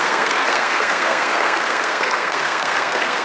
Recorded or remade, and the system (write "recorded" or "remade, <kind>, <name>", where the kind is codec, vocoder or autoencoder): remade, codec, SNAC